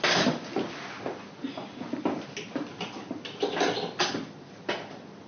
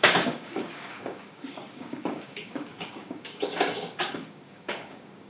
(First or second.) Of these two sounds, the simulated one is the second